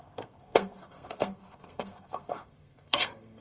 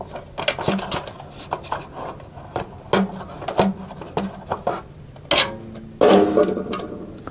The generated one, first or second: first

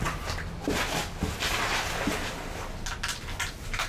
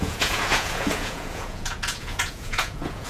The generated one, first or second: second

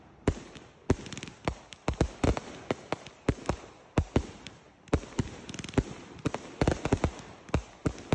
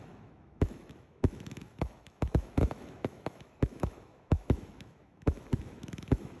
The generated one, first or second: second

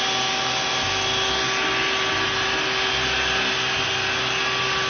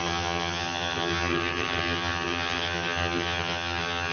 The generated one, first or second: second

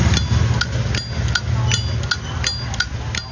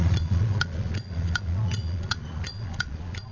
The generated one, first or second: second